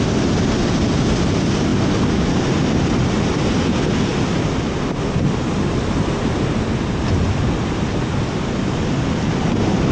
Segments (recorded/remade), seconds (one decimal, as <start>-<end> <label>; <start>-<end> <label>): 0.0-9.9 recorded